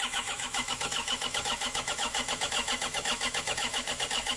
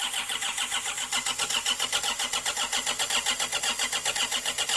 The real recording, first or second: second